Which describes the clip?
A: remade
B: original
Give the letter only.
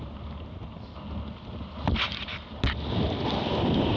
B